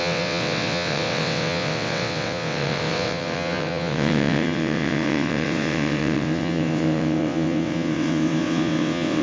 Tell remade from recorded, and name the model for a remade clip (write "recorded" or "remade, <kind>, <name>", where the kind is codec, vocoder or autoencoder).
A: remade, vocoder, WaveNeXt